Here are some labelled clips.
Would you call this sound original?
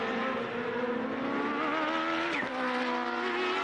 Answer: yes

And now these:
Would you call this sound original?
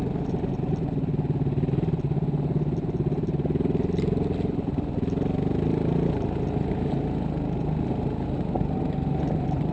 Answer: yes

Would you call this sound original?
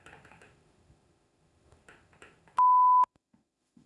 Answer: no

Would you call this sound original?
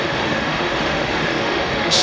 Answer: no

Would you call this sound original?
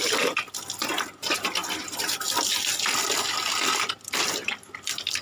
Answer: yes